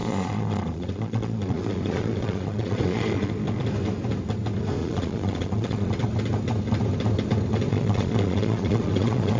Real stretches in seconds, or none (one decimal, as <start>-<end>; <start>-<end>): 3.3-4.8; 5.9-7.7